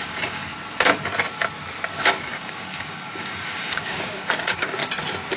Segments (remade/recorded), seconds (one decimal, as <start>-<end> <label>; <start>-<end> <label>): 0.0-0.5 remade; 0.5-1.9 recorded; 1.9-4.8 remade; 4.8-5.4 recorded